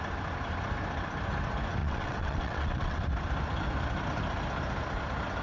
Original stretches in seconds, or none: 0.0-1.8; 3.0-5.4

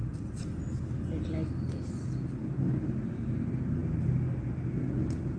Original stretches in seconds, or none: 0.0-5.4

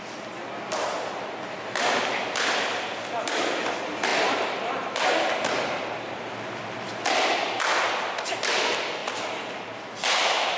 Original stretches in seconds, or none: 0.0-10.6

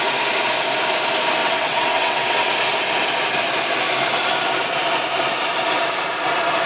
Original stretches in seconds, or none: 0.0-1.4; 2.5-6.7

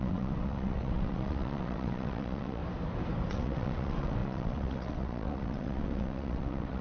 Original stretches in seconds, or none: 2.6-3.3

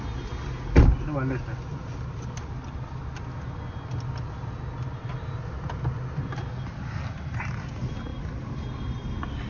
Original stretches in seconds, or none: 0.0-9.5

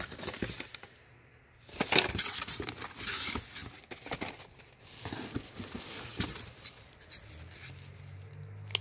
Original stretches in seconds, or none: 0.0-8.8

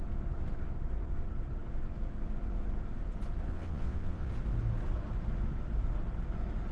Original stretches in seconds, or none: 0.0-3.5; 4.3-6.7